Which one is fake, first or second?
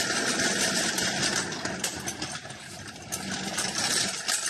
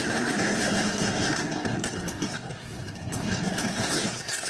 second